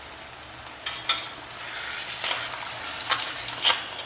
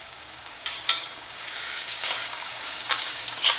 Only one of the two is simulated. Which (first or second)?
second